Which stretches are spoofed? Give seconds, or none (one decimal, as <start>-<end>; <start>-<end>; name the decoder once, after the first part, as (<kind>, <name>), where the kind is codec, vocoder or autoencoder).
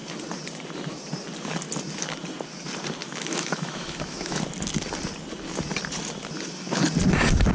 3.0-4.4 (autoencoder, DAC-VAE)